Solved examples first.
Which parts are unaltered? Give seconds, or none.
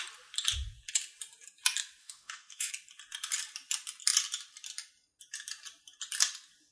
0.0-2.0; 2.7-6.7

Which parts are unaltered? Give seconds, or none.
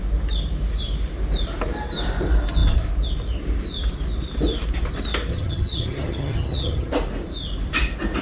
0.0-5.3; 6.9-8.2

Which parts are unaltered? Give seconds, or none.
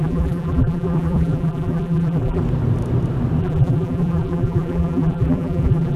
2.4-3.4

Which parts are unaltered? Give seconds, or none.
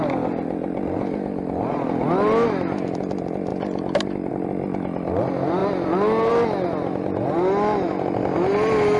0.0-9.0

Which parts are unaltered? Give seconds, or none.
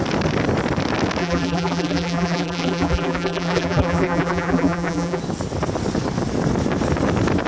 0.0-1.2; 5.2-7.5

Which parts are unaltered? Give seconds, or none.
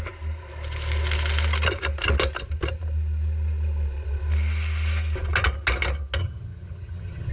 0.0-6.2